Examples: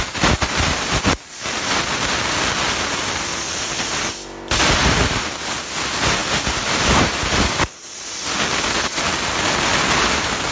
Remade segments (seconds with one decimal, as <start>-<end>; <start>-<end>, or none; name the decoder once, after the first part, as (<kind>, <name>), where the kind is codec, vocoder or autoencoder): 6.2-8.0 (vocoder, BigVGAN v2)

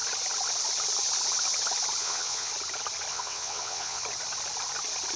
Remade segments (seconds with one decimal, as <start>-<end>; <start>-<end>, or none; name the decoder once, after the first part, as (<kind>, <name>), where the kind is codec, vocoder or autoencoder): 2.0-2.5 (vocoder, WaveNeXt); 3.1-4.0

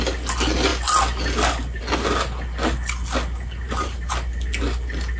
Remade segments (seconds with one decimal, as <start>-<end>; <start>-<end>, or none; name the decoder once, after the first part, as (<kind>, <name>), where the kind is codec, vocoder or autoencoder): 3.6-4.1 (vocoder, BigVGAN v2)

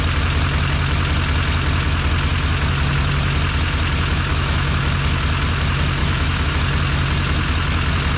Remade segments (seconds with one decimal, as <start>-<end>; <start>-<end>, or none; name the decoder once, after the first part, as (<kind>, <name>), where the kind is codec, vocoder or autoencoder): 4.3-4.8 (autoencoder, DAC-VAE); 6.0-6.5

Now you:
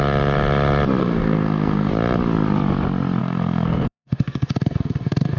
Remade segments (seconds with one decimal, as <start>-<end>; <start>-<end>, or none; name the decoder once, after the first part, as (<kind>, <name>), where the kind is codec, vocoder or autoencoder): 1.0-1.9 (codec, SNAC); 3.2-5.4

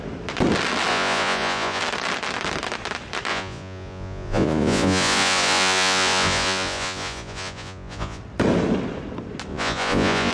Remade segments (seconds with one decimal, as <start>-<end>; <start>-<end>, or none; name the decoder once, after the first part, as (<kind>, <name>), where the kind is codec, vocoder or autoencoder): 0.9-1.8 (vocoder, Vocos); 3.3-8.2; 9.5-10.3

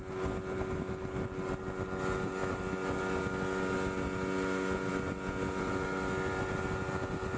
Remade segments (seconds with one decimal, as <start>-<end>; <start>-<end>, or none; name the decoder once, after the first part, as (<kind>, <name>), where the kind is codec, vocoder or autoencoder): none